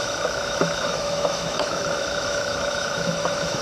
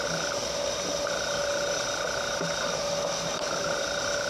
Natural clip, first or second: second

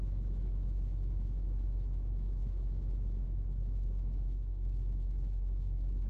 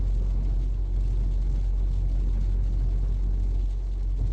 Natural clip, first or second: second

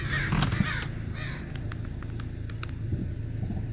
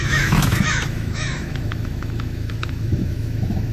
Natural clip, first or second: first